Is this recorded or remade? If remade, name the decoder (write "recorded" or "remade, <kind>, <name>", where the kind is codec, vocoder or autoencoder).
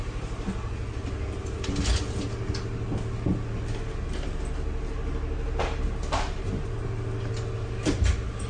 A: recorded